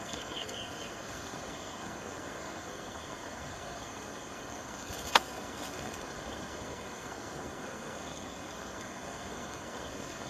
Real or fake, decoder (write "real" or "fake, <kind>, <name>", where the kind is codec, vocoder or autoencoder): fake, codec, SNAC